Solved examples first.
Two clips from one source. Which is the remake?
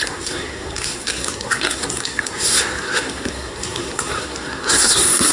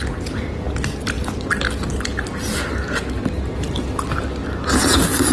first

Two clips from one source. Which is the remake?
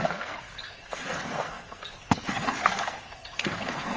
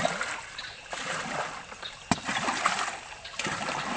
first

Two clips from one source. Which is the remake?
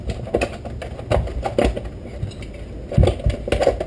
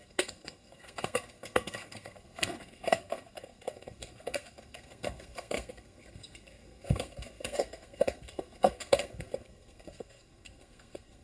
second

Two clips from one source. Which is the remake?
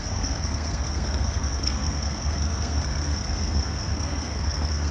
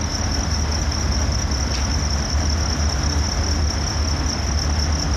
first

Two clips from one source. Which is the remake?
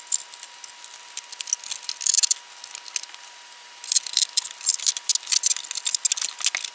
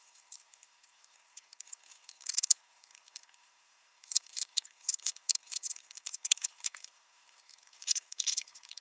second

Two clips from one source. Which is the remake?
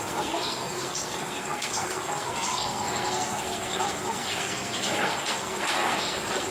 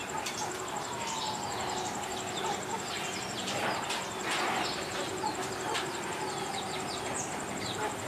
first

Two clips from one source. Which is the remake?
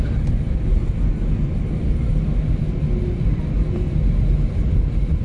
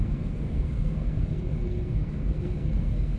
second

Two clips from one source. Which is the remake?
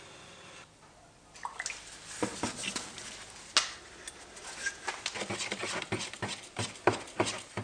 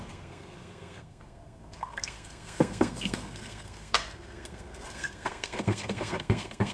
second